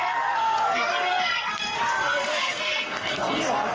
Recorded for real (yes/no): no